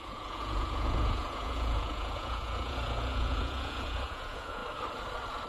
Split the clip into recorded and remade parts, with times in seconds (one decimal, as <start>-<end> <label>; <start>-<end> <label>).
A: 0.0-4.6 remade; 4.6-5.5 recorded